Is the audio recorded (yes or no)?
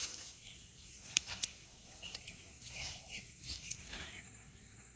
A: no